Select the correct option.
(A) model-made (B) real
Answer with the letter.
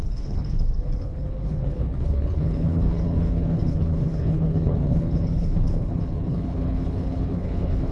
A